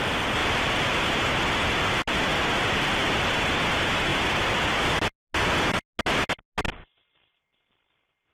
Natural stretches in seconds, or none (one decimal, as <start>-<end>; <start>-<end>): 0.0-0.4; 1.3-8.3